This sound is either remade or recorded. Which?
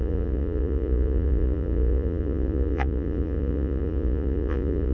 remade